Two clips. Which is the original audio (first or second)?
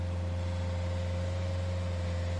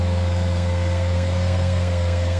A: first